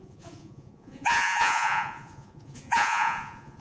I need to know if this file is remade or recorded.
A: remade